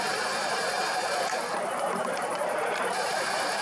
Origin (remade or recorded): remade